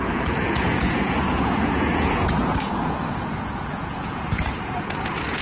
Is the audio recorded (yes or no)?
no